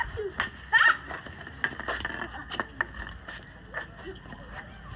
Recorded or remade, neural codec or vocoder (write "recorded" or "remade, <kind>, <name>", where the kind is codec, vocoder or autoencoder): recorded